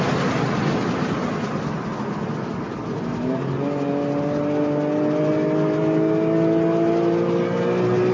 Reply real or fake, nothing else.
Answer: real